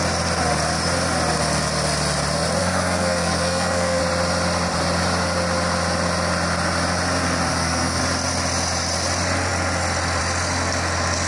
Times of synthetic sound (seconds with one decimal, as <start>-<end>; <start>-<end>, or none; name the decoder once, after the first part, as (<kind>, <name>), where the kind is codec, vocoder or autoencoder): 2.6-4.0 (codec, SNAC); 7.5-8.0